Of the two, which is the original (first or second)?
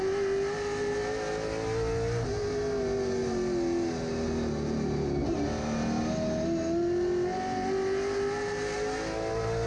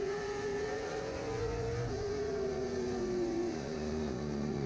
first